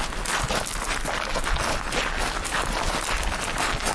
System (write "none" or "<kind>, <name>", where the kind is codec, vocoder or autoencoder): none